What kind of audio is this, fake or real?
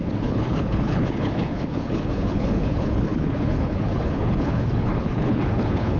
fake